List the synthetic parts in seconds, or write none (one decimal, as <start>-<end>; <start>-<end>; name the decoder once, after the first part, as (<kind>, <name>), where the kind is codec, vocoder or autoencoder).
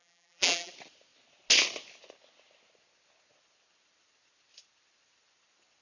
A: 0.0-0.7 (vocoder, BigVGAN v2)